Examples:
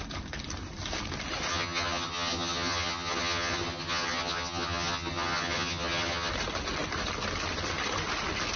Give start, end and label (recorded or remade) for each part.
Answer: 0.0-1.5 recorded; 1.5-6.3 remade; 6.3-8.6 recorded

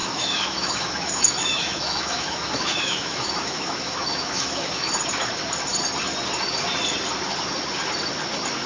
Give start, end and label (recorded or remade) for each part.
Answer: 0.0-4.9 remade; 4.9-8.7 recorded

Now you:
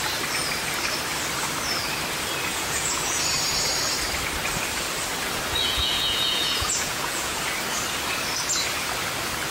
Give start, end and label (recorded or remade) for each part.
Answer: 0.0-2.5 recorded; 2.5-3.2 remade; 3.2-5.6 recorded; 5.6-7.4 remade; 7.4-9.5 recorded

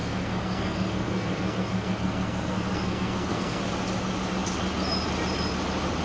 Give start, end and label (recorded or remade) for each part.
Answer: 0.0-3.6 remade; 3.6-6.0 recorded